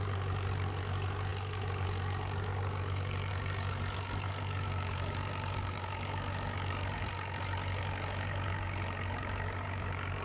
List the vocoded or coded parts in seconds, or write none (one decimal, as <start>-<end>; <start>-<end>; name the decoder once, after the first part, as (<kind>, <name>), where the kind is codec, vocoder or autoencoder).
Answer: 0.0-10.2 (codec, DAC)